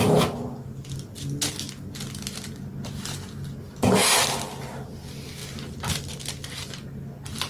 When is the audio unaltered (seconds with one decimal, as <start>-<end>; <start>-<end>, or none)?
0.0-7.5